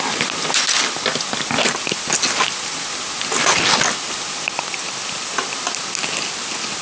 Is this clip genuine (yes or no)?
yes